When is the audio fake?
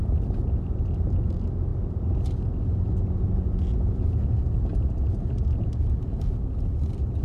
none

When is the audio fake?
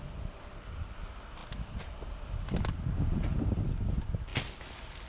none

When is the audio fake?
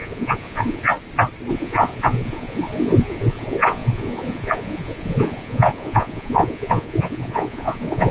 0.0-0.9 (vocoder, Vocos); 1.5-8.1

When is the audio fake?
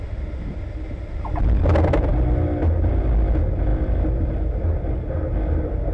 none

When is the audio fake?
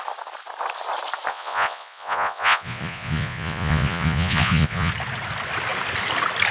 1.3-4.9 (vocoder, Vocos)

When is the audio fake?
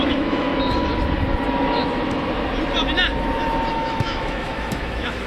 0.0-0.5 (autoencoder, DAC-VAE); 3.7-5.3